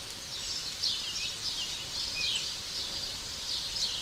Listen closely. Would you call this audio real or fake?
real